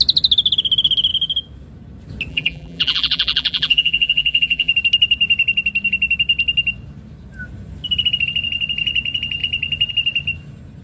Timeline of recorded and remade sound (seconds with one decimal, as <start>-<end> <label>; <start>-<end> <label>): 0.0-2.3 recorded; 2.3-4.7 remade; 4.7-10.8 recorded

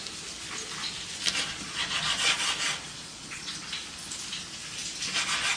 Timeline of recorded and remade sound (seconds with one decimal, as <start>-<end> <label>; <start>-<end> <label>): 0.0-1.5 recorded; 1.5-2.5 remade; 2.5-2.9 recorded; 2.9-3.5 remade; 3.5-5.6 recorded

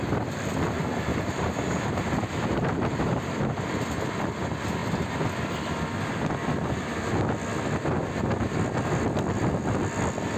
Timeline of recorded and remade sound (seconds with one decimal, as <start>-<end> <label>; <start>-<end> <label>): 0.0-1.1 recorded; 1.1-3.6 remade; 3.6-10.4 recorded

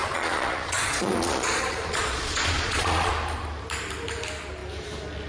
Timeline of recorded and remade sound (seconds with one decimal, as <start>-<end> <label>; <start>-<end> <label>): 0.0-3.1 remade; 3.1-5.3 recorded

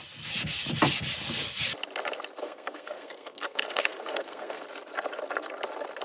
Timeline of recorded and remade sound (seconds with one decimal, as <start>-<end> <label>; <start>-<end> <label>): 0.0-2.4 recorded; 2.4-4.6 remade; 4.6-6.0 recorded

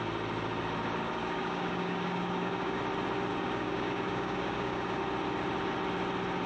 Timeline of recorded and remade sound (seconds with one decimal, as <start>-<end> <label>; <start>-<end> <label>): 0.0-1.2 recorded; 1.2-2.8 remade; 2.8-3.3 recorded; 3.3-5.0 remade; 5.0-6.5 recorded

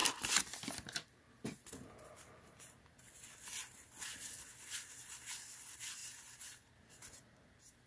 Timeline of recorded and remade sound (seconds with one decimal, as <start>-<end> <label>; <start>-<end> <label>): 0.0-7.9 recorded

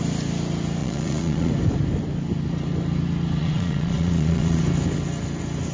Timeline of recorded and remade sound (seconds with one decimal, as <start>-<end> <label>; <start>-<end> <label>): 0.0-0.8 recorded; 0.8-1.5 remade; 1.5-3.4 recorded; 3.4-4.6 remade; 4.6-5.7 recorded